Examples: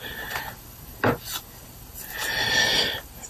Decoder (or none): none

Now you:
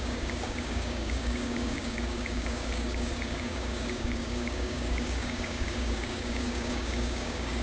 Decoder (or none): codec, DAC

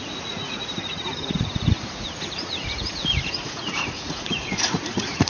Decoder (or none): vocoder, Vocos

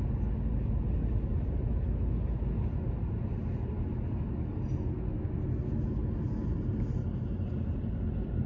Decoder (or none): none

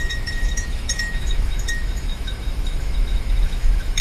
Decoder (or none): autoencoder, DAC-VAE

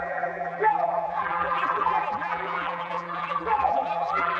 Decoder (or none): vocoder, BigVGAN v2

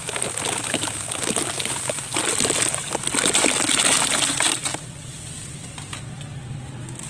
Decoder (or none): none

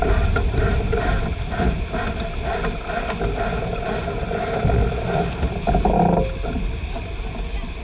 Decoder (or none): none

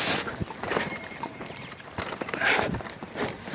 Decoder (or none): vocoder, BigVGAN v2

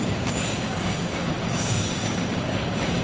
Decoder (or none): codec, DAC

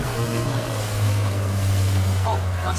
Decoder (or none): codec, SNAC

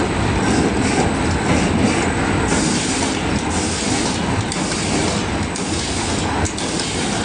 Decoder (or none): none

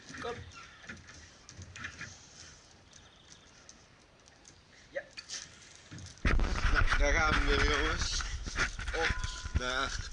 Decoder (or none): none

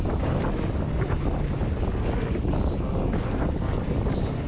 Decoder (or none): none